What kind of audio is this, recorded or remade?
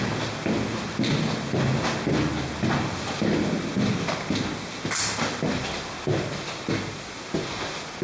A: recorded